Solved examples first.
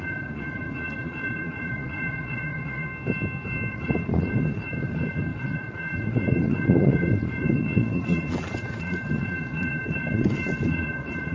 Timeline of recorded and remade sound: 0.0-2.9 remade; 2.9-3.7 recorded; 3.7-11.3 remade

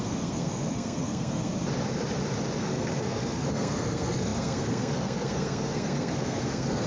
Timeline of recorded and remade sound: 0.0-1.5 remade; 1.5-2.6 recorded; 2.6-6.9 remade